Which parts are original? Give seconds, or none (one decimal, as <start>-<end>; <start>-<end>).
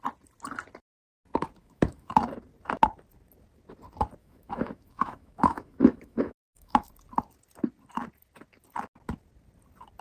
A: 0.0-1.6; 2.1-4.2; 6.9-10.0